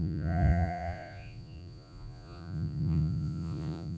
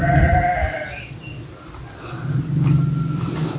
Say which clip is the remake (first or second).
first